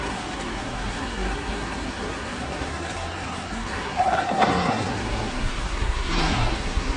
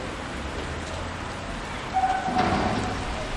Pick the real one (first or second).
second